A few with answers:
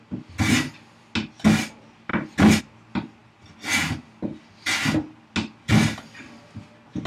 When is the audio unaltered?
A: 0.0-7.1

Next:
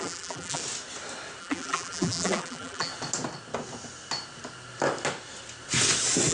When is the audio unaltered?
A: 0.6-1.4; 2.9-6.3

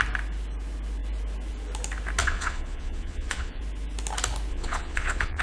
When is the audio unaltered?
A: 0.0-2.2; 3.6-4.5

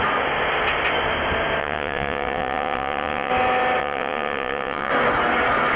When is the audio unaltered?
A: 0.0-1.6; 3.3-3.8; 4.9-5.8

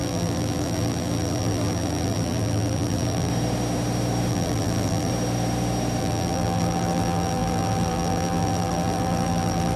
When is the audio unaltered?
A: 3.3-4.3; 5.1-6.0

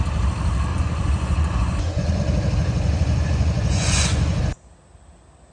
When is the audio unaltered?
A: 0.0-0.7; 2.2-2.6; 4.4-5.5

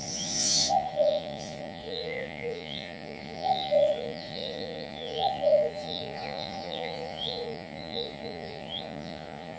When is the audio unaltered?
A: none